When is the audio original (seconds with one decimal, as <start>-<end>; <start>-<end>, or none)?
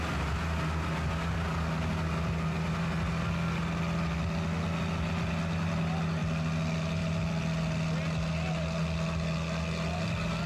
0.0-10.5